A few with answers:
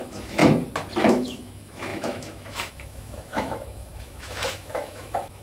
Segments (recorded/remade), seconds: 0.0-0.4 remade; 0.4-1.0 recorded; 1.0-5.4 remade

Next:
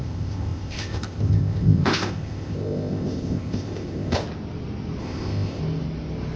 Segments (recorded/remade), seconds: 0.0-4.2 remade; 4.2-5.0 recorded; 5.0-5.6 remade; 5.6-6.4 recorded

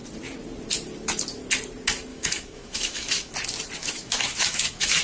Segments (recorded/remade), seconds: 0.0-2.1 recorded; 2.1-3.3 remade; 3.3-3.8 recorded; 3.8-5.0 remade

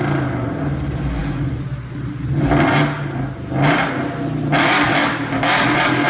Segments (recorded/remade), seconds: 0.0-6.1 recorded